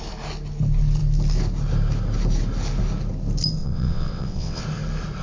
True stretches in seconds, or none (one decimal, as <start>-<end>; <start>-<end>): 0.0-3.6; 4.6-5.2